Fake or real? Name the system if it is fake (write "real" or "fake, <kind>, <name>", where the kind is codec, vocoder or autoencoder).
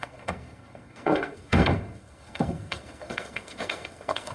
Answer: fake, codec, SNAC